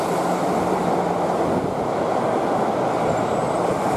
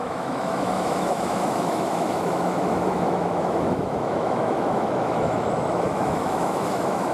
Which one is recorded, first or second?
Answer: first